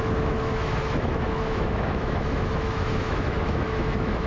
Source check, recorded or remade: remade